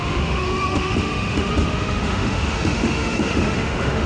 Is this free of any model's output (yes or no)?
no